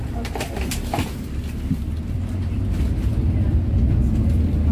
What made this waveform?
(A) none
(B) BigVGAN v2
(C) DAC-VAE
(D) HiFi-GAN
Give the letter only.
A